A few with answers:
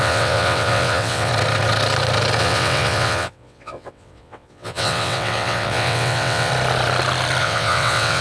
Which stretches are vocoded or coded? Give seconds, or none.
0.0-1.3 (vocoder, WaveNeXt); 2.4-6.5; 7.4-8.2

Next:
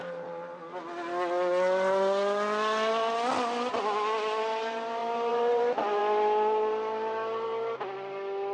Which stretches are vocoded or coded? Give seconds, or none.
5.0-6.0 (vocoder, BigVGAN v2)

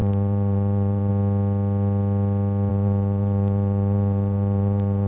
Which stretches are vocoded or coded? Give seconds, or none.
0.0-1.1 (vocoder, BigVGAN v2); 2.7-5.1

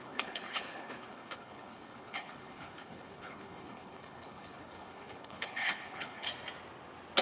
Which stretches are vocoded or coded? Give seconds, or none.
0.0-6.3 (codec, HILCodec)

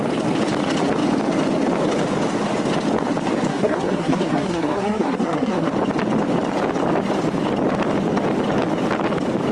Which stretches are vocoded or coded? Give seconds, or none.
3.5-5.7 (codec, SNAC)